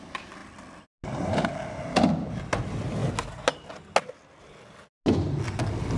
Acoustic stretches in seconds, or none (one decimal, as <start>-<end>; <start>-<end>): 0.0-6.0